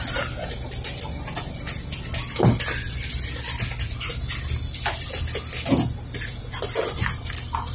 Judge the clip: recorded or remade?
recorded